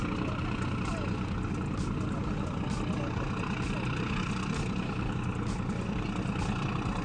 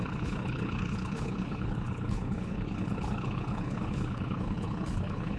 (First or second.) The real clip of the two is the first